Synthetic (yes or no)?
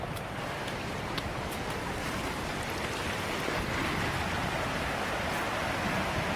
no